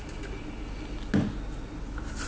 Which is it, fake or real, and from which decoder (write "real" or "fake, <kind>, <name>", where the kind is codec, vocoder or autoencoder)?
real